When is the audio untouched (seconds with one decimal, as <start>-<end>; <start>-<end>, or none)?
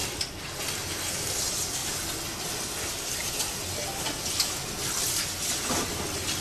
0.0-6.4